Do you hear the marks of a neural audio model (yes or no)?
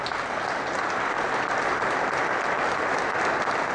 no